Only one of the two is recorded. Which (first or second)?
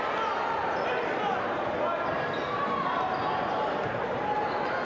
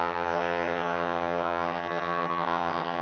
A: first